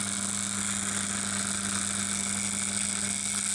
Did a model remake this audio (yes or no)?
no